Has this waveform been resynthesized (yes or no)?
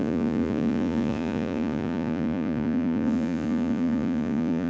yes